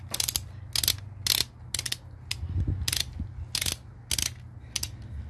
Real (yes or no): yes